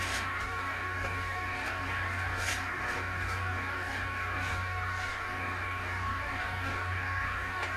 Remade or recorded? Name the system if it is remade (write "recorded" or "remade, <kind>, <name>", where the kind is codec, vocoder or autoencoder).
remade, codec, DAC